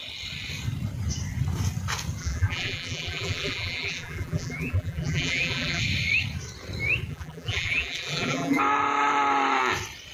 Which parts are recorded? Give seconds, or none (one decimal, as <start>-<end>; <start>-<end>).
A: 0.0-2.2; 5.8-7.1; 8.6-10.1